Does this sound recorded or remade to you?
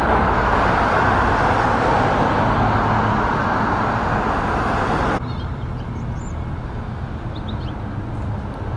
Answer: recorded